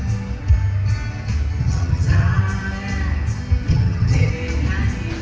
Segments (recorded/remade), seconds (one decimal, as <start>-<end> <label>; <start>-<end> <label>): 0.0-1.6 recorded; 1.6-2.4 remade; 2.4-3.7 recorded; 3.7-4.3 remade; 4.3-5.2 recorded